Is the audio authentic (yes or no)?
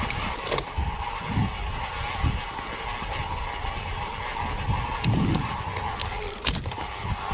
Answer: yes